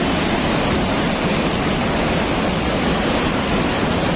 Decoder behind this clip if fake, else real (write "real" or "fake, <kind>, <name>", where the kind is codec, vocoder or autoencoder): real